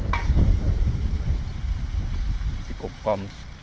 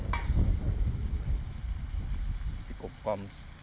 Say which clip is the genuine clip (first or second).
second